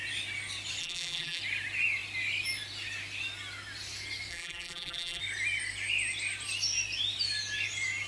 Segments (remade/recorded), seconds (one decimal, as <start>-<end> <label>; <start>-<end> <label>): 0.0-0.8 recorded; 0.8-1.4 remade; 1.4-4.3 recorded; 4.3-5.2 remade; 5.2-8.1 recorded

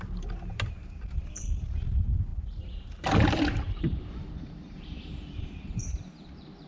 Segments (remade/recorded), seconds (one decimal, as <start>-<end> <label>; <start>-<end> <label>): 0.0-6.7 remade

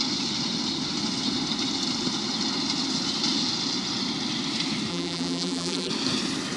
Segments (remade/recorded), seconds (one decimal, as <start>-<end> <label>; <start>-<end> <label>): 0.0-4.9 recorded; 4.9-5.9 remade; 5.9-6.6 recorded

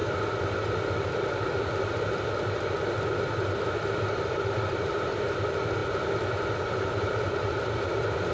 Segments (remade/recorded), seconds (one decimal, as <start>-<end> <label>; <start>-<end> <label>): 0.0-8.3 remade

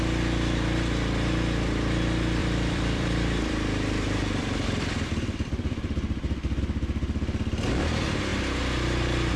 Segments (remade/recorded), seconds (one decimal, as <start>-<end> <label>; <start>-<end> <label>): 0.0-2.4 recorded; 2.4-6.6 remade; 6.6-9.4 recorded

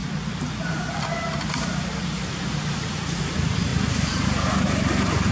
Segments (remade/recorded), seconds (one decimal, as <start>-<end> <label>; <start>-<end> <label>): 0.0-3.7 recorded; 3.7-5.3 remade

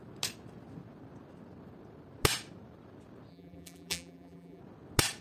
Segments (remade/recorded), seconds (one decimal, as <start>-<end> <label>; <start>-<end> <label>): 0.0-3.3 recorded; 3.3-4.6 remade; 4.6-5.2 recorded